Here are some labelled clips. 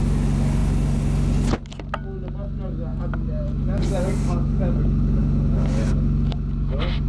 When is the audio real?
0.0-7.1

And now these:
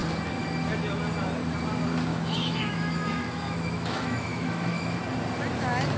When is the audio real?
0.0-2.1; 5.0-6.0

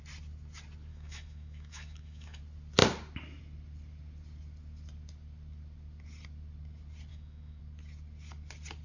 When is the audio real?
0.0-0.9; 2.4-7.1; 7.6-8.8

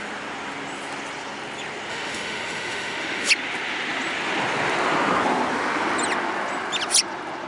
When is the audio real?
0.0-1.9; 3.3-7.5